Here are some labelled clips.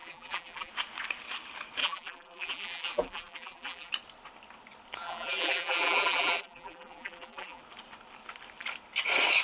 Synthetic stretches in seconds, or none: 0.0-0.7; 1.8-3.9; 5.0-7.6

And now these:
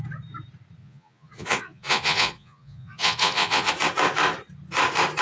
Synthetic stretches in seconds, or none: 0.8-3.7